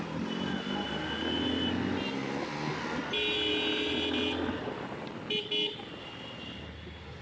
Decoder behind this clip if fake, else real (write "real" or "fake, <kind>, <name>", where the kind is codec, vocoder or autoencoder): real